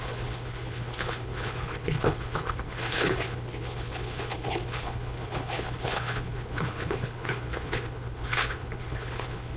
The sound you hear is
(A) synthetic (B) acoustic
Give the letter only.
A